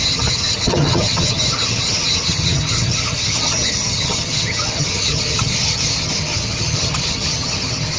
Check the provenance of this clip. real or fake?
fake